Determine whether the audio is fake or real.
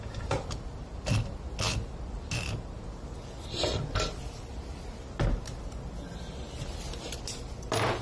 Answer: real